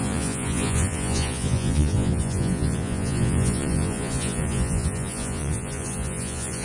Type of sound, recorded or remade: remade